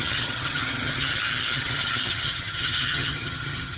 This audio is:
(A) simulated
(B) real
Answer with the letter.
A